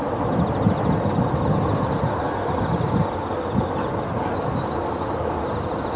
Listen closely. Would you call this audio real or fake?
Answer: real